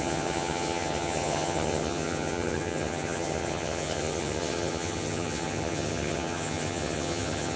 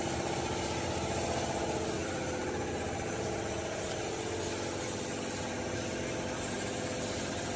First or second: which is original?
second